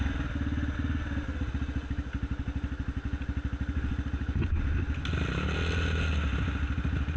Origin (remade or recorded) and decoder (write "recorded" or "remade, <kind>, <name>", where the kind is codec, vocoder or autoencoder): recorded